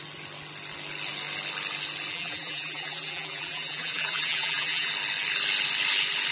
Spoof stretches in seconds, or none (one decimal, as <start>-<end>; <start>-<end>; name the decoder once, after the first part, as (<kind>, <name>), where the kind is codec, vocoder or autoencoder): 2.1-4.9 (vocoder, BigVGAN v2)